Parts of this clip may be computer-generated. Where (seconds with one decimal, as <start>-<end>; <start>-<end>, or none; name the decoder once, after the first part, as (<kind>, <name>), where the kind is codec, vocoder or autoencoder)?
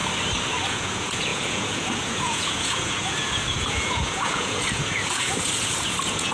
0.6-6.3 (vocoder, Vocos)